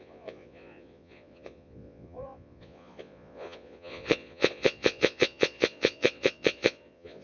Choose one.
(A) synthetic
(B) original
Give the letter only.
A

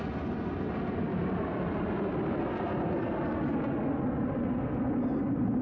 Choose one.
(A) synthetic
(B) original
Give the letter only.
B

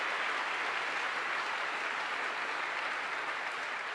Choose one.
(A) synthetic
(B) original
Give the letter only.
B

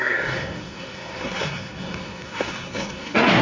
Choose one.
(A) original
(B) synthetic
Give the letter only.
B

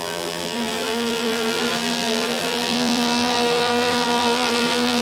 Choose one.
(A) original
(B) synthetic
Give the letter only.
B